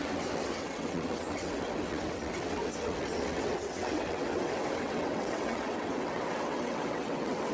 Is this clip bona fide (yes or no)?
no